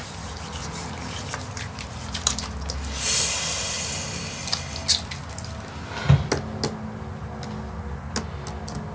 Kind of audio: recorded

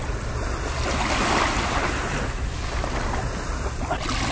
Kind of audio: recorded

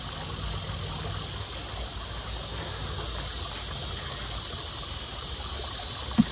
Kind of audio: recorded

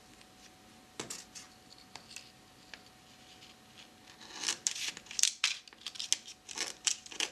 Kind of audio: recorded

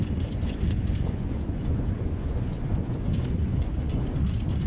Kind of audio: remade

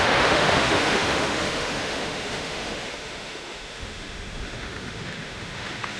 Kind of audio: remade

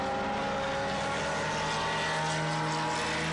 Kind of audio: recorded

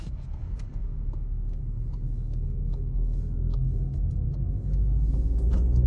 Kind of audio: remade